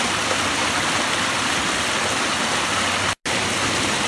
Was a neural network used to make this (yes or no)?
no